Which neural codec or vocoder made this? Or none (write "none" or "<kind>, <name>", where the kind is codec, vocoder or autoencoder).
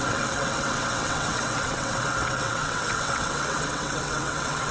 vocoder, WaveNeXt